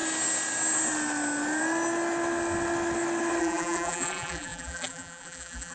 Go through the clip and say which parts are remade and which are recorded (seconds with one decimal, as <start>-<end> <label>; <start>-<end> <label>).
0.0-3.4 recorded; 3.4-5.7 remade

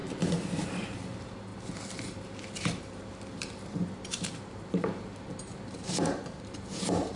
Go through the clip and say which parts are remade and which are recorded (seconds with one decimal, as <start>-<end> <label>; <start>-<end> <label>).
0.0-7.2 remade

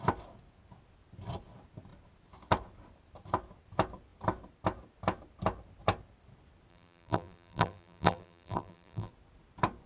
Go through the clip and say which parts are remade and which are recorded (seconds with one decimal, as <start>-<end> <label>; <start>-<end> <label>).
0.0-6.7 recorded; 6.7-9.1 remade; 9.1-9.9 recorded